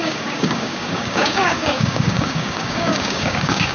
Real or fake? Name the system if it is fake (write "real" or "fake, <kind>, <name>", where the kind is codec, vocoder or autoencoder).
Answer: fake, codec, DAC